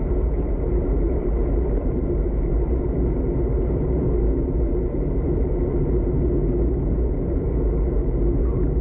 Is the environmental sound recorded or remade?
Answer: remade